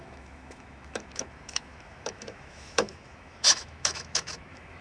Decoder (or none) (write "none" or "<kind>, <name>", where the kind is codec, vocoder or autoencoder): autoencoder, DAC-VAE